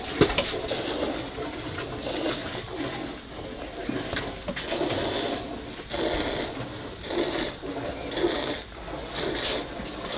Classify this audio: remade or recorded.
recorded